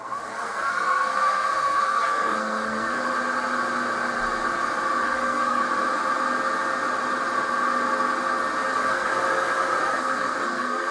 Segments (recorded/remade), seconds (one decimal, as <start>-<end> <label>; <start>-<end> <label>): 0.0-3.1 remade; 3.1-5.0 recorded; 5.0-5.6 remade; 5.6-8.7 recorded; 8.7-9.1 remade; 9.1-9.8 recorded; 9.8-10.9 remade